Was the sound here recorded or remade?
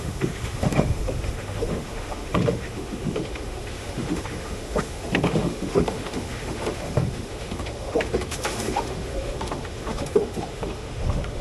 remade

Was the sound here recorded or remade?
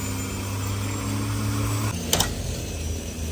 recorded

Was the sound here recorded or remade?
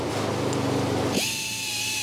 recorded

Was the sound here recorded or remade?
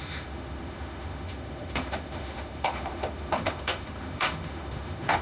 remade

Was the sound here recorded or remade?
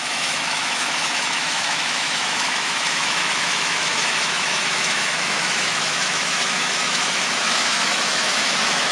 remade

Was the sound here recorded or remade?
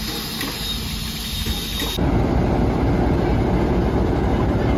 recorded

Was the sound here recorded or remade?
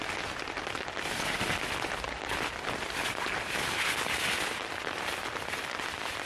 recorded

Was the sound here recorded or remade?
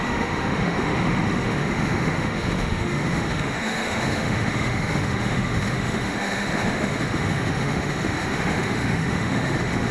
remade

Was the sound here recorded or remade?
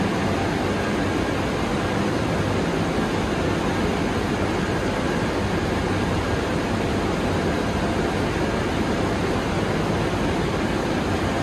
recorded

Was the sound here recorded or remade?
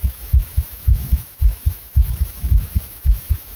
remade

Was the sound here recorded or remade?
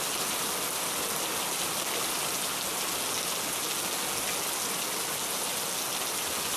recorded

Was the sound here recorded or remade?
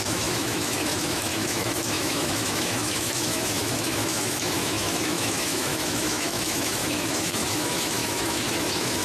remade